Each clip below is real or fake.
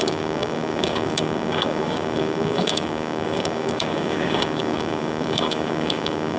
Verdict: fake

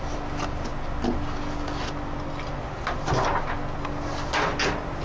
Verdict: real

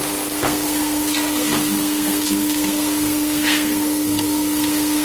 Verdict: fake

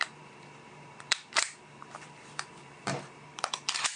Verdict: fake